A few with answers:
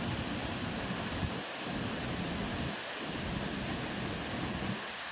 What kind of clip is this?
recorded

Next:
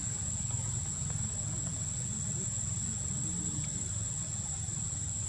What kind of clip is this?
recorded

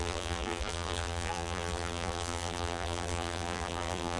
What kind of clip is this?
remade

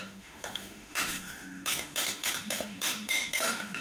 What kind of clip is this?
remade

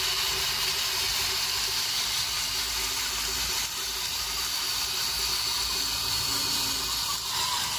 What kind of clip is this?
recorded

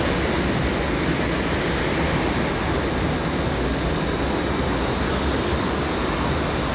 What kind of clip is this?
recorded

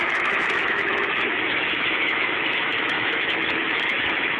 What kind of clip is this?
remade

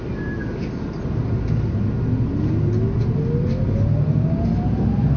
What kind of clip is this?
recorded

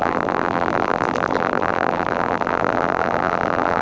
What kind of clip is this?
remade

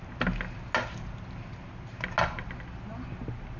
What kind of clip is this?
recorded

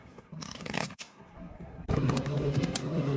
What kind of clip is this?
remade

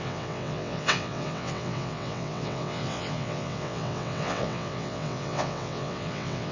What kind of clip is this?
remade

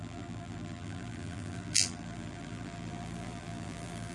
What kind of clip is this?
remade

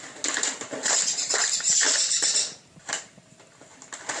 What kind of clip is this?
recorded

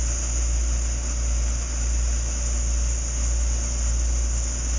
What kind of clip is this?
recorded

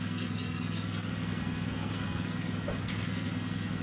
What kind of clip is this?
remade